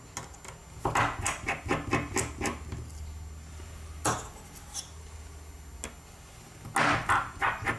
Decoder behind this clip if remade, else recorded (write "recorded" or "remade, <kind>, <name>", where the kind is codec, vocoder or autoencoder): recorded